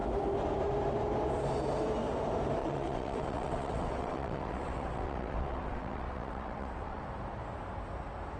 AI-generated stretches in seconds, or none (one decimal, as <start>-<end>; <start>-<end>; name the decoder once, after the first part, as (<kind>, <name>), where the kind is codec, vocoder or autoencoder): 2.6-7.0 (vocoder, WaveNeXt)